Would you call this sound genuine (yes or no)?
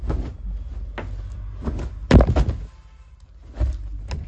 yes